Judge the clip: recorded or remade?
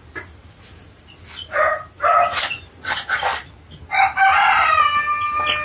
recorded